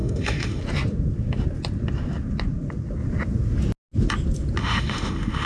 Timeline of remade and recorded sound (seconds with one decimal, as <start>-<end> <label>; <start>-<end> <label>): 0.0-0.6 remade; 0.6-4.6 recorded; 4.6-5.5 remade